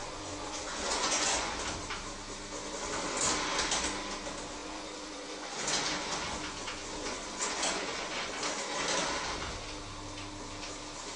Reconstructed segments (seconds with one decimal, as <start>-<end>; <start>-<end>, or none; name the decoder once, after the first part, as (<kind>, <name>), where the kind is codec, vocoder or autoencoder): 0.0-1.5 (vocoder, Vocos); 4.6-8.3